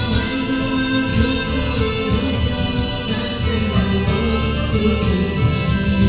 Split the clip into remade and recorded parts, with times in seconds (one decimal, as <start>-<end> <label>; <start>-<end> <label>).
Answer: 0.0-6.1 recorded

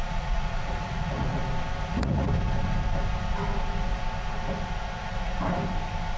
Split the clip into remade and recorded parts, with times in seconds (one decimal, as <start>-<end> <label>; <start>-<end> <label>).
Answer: 0.0-1.4 remade; 1.4-1.9 recorded; 1.9-2.3 remade; 2.3-6.2 recorded

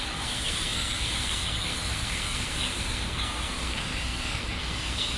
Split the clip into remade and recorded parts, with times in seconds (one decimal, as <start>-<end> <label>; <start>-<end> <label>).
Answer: 0.0-5.2 remade